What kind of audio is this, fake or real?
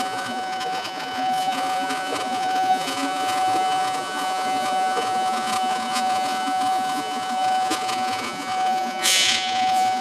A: fake